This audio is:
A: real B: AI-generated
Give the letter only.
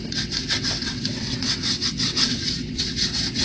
B